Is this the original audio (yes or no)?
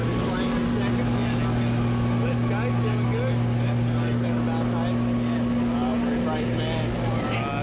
yes